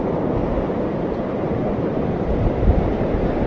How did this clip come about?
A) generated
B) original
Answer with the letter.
A